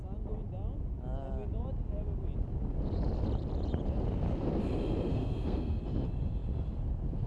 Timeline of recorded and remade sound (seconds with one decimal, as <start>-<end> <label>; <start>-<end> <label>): 0.0-5.1 recorded; 5.1-5.8 remade; 5.8-7.3 recorded